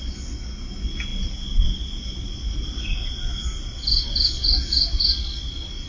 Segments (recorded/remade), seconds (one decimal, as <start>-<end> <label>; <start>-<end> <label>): 0.0-5.9 recorded